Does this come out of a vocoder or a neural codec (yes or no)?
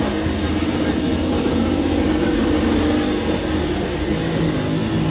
no